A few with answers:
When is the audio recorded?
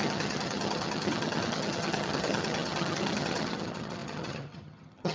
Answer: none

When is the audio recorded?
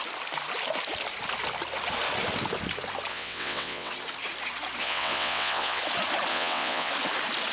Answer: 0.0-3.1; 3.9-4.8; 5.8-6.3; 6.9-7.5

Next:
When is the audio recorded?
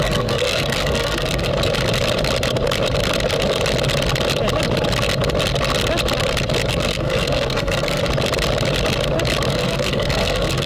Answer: 1.5-6.7; 8.0-9.5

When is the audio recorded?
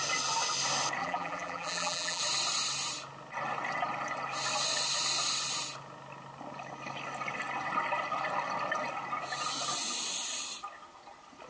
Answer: 0.0-1.0; 2.2-11.5